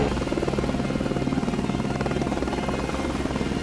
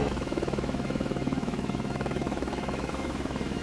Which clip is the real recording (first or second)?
first